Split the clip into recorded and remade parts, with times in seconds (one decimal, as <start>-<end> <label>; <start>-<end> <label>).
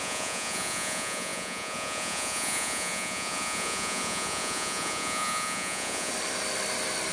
0.0-6.1 remade; 6.1-7.1 recorded